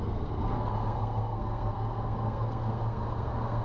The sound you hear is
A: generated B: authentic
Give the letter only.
A